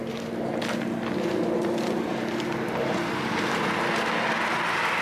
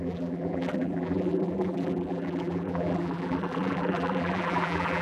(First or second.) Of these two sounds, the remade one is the second